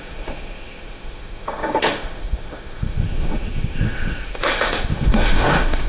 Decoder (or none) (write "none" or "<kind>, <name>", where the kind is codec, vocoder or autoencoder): autoencoder, DAC-VAE